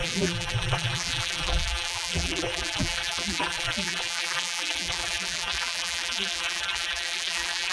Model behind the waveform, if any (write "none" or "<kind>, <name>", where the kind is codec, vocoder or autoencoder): vocoder, BigVGAN v2